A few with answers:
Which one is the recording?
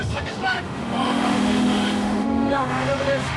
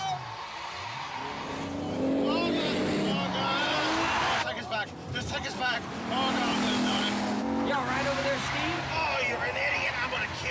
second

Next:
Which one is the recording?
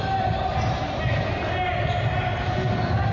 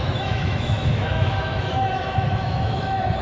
first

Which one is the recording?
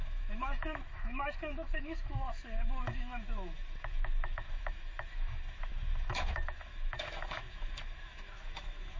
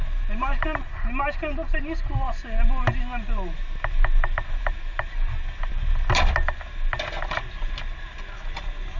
second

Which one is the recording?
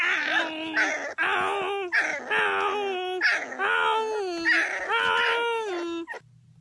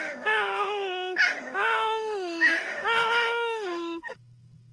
first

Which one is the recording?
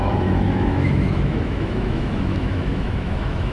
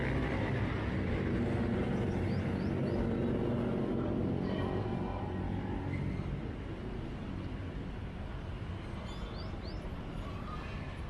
second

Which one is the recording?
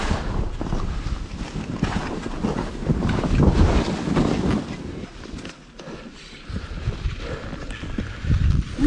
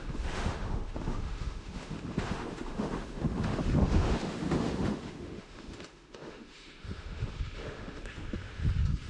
first